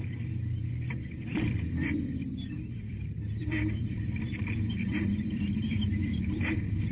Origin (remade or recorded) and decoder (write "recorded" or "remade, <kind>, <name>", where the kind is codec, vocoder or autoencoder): remade, vocoder, BigVGAN v2